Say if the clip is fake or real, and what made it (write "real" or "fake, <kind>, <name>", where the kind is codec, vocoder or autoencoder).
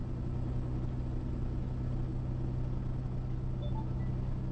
real